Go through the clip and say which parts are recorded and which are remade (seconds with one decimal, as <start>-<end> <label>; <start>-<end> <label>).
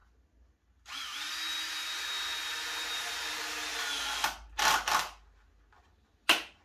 0.0-6.6 recorded